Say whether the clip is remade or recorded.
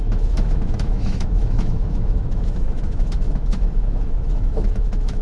remade